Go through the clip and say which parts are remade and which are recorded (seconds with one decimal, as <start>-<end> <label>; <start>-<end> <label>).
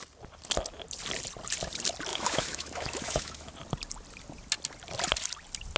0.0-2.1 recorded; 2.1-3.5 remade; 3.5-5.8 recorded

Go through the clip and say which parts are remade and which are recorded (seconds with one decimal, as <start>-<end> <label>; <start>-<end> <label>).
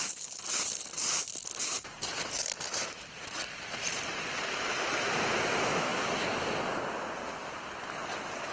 0.0-8.5 recorded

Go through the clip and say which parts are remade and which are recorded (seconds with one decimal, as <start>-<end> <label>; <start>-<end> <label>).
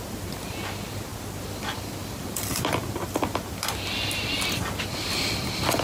0.0-5.8 recorded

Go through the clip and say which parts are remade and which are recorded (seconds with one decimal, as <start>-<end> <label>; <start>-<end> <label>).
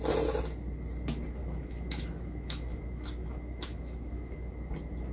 0.0-1.4 recorded; 1.4-4.5 remade; 4.5-5.1 recorded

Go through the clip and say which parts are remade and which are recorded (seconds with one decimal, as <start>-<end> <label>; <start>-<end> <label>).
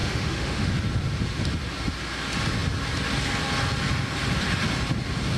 0.0-0.7 remade; 0.7-5.4 recorded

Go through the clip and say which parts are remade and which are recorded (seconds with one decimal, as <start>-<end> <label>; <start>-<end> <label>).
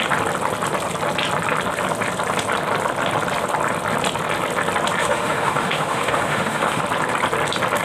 0.0-5.0 recorded; 5.0-6.8 remade; 6.8-7.8 recorded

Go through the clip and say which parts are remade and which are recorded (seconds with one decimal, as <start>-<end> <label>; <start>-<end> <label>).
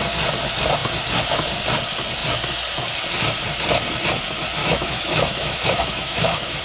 0.0-4.6 recorded; 4.6-6.6 remade